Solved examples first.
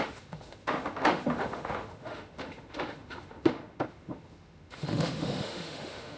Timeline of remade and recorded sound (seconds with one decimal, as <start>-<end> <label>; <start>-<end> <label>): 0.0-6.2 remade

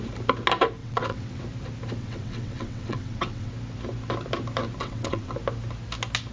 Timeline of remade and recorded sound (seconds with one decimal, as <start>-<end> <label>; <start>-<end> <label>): 0.0-0.8 recorded; 0.8-1.4 remade; 1.4-2.0 recorded; 2.0-3.5 remade; 3.5-4.8 recorded; 4.8-5.3 remade; 5.3-6.3 recorded

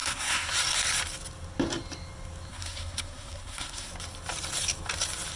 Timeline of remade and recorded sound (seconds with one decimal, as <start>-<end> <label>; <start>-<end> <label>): 0.0-0.5 remade; 0.5-2.5 recorded; 2.5-3.9 remade; 3.9-5.4 recorded